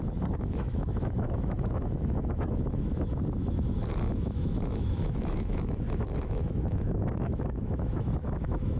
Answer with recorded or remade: remade